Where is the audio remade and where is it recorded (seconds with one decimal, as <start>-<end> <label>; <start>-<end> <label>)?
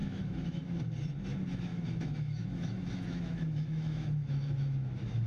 0.0-0.8 remade; 0.8-1.7 recorded; 1.7-5.3 remade